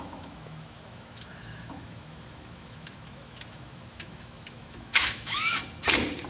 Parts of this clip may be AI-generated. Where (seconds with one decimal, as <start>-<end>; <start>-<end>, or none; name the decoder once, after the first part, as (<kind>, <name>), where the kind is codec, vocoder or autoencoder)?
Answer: 0.0-5.6 (autoencoder, DAC-VAE)